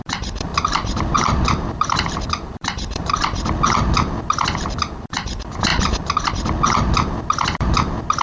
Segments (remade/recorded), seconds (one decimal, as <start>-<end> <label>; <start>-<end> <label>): 0.0-0.5 recorded; 0.5-3.1 remade; 3.1-8.2 recorded

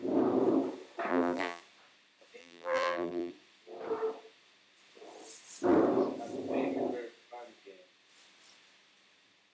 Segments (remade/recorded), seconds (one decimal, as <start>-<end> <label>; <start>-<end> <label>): 0.0-1.1 recorded; 1.1-1.6 remade; 1.6-2.4 recorded; 2.4-3.3 remade; 3.3-9.5 recorded

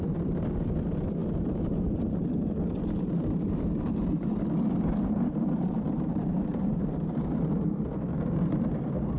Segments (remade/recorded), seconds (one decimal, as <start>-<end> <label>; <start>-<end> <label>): 0.0-6.1 recorded; 6.1-6.9 remade; 6.9-9.2 recorded

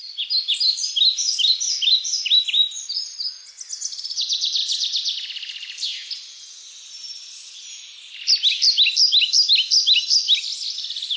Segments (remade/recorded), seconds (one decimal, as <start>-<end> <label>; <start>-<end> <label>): 0.0-1.2 recorded; 1.2-3.3 remade; 3.3-4.6 recorded; 4.6-6.7 remade; 6.7-11.2 recorded

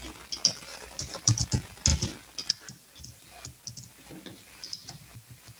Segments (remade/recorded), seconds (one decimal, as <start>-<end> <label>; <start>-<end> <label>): 0.0-0.7 recorded; 0.7-1.4 remade; 1.4-5.6 recorded

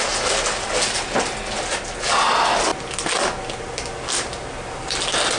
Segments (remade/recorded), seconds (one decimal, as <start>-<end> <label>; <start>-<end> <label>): 0.0-5.4 recorded

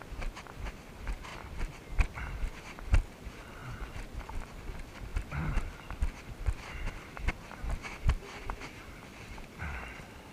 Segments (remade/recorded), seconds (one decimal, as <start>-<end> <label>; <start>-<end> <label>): 0.0-3.6 remade; 3.6-4.2 recorded; 4.2-10.3 remade

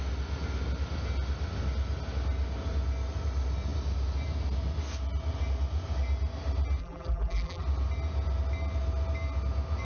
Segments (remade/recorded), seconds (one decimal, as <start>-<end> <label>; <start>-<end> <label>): 0.0-6.8 recorded; 6.8-7.6 remade; 7.6-9.8 recorded